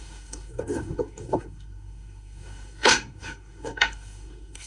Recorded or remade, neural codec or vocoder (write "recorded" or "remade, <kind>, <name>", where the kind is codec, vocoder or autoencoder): remade, codec, SNAC